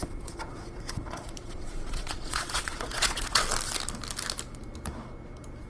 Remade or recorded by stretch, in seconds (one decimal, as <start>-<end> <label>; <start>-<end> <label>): 0.0-3.4 remade; 3.4-5.7 recorded